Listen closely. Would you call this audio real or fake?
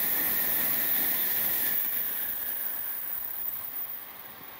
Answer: fake